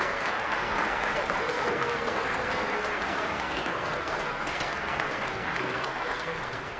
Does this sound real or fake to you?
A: fake